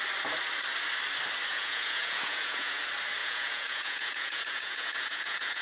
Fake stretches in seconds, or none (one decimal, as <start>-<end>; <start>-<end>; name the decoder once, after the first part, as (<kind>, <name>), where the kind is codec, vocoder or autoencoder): 1.5-2.8 (vocoder, Vocos); 3.2-5.6